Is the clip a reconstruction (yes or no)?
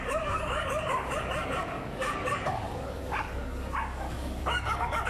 yes